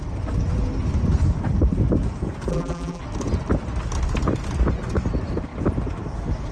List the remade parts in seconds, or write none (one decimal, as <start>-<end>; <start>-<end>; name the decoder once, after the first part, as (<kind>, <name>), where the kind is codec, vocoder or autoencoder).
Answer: 2.5-3.0 (vocoder, BigVGAN v2)